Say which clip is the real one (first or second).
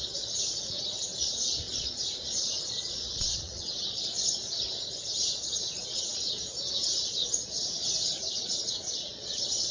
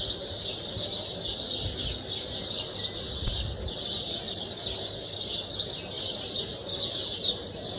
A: second